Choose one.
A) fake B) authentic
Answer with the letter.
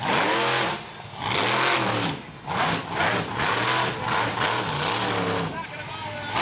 B